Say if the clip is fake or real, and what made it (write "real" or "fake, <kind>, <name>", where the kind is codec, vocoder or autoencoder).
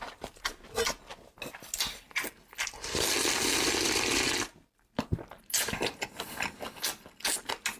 real